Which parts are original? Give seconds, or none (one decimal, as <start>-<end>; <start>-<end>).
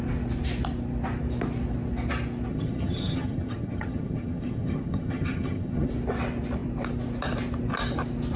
0.0-2.5; 5.9-8.4